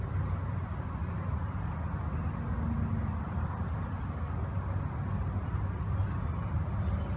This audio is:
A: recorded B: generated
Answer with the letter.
A